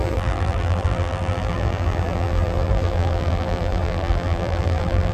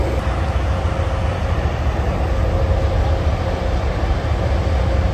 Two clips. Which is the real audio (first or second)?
second